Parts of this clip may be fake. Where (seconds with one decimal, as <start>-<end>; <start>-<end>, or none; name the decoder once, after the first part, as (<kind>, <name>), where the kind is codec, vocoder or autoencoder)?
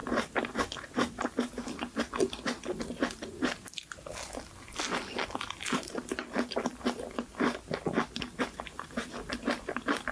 1.7-10.1 (vocoder, BigVGAN v2)